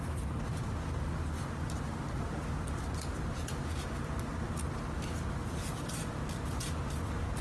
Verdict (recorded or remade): recorded